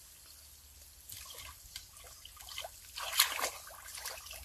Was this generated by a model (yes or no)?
no